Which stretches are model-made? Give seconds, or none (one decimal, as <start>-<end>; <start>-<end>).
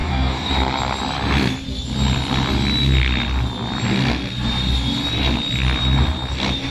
0.0-0.5